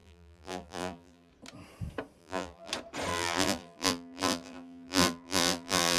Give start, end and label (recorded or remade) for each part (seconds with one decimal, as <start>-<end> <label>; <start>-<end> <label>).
0.0-1.3 remade; 1.3-2.2 recorded; 2.2-2.7 remade; 2.7-3.1 recorded; 3.1-6.0 remade